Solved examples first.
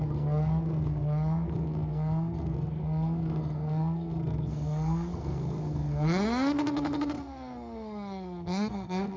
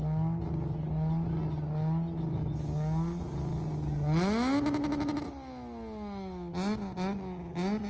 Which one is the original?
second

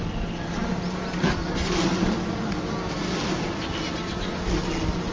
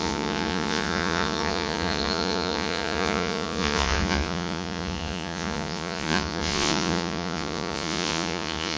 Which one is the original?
first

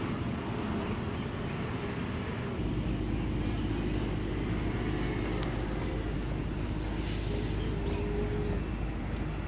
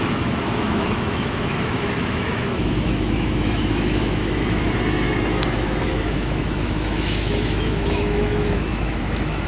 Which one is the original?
first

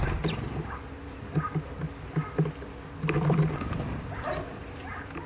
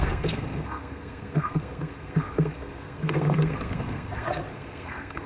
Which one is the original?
first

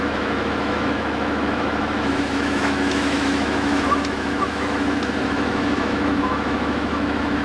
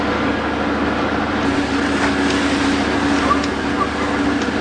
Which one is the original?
second